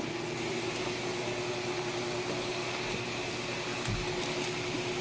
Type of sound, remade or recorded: recorded